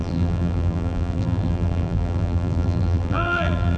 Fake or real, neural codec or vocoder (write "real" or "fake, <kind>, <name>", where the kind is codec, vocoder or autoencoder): fake, vocoder, BigVGAN v2